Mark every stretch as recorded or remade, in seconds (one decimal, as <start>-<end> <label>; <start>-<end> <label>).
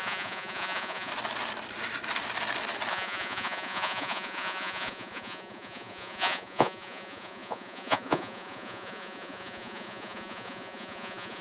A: 0.0-1.1 remade; 1.1-2.9 recorded; 2.9-11.4 remade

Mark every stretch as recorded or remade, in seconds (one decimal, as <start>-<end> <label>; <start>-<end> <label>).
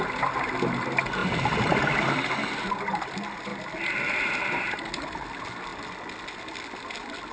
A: 0.0-7.3 recorded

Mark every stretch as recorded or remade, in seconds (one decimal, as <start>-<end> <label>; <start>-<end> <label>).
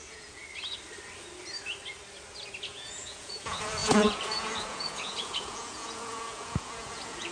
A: 0.0-0.4 remade; 0.4-2.6 recorded; 2.6-7.3 remade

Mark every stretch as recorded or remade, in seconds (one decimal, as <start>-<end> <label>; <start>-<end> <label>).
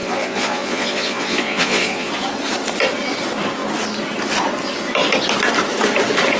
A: 0.0-2.1 remade; 2.1-6.4 recorded